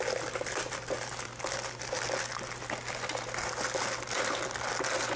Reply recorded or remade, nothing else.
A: recorded